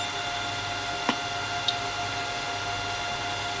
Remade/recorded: recorded